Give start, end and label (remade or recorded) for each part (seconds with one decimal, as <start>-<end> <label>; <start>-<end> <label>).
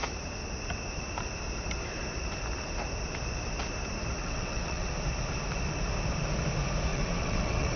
0.0-4.2 recorded; 4.2-4.9 remade; 4.9-6.9 recorded; 6.9-7.8 remade